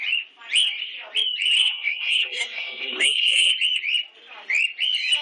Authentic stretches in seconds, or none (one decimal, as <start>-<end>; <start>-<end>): 0.0-1.6; 3.5-5.2